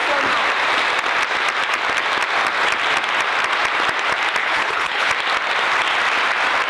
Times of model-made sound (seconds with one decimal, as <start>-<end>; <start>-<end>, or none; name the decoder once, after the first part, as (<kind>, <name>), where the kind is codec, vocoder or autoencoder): 4.4-5.1 (codec, HILCodec)